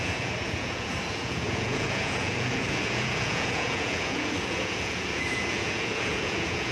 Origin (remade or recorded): remade